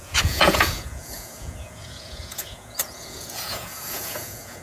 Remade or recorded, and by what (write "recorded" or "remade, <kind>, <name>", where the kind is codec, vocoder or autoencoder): remade, vocoder, Vocos